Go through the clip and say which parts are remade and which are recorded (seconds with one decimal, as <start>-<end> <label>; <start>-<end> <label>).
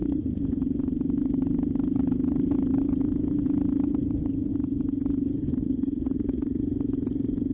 0.0-5.6 recorded; 5.6-6.6 remade; 6.6-7.5 recorded